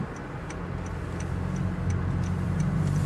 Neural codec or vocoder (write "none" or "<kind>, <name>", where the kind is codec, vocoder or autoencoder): none